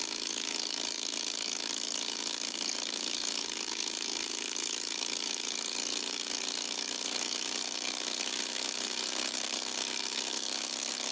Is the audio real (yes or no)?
no